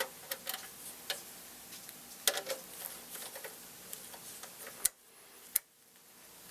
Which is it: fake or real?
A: real